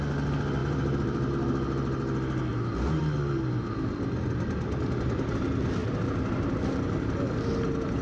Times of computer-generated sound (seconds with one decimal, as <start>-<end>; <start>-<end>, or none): 0.6-1.3; 2.5-3.0